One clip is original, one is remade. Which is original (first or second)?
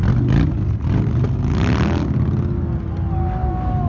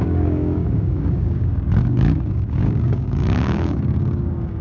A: first